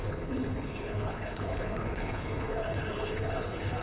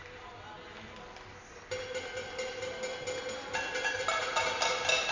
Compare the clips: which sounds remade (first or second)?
first